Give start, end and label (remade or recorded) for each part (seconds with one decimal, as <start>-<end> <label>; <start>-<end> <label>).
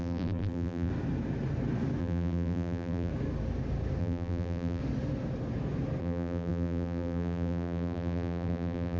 0.0-0.9 remade; 0.9-2.0 recorded; 2.0-3.1 remade; 3.1-4.0 recorded; 4.0-4.8 remade; 4.8-6.0 recorded; 6.0-9.0 remade